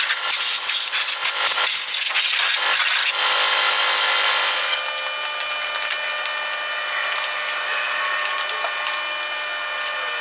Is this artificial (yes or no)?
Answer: no